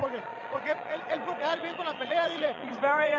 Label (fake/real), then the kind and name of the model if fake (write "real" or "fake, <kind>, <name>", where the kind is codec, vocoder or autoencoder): fake, vocoder, Vocos